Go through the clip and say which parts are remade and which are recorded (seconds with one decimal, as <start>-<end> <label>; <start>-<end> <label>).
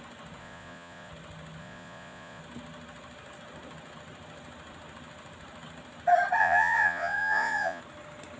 0.0-0.4 recorded; 0.4-1.1 remade; 1.1-1.6 recorded; 1.6-2.4 remade; 2.4-6.4 recorded; 6.4-7.8 remade; 7.8-8.4 recorded